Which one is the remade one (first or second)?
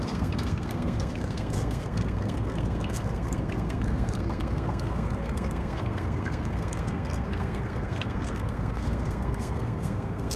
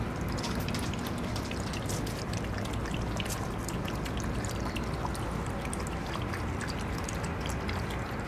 first